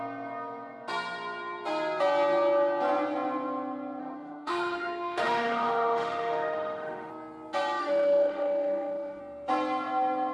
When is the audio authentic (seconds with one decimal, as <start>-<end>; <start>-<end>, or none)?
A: 0.0-4.0; 7.1-7.8; 9.2-10.3